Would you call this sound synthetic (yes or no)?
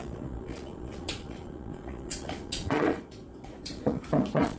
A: yes